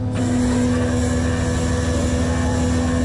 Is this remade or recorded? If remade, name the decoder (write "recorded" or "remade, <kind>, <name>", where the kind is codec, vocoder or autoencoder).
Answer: recorded